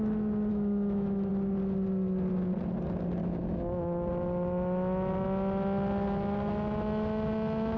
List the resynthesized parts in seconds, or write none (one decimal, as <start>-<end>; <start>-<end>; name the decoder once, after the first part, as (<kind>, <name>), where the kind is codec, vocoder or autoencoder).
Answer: 0.5-1.3 (autoencoder, DAC-VAE); 3.2-4.1